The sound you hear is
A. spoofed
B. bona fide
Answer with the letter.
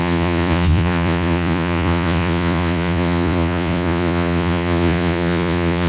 A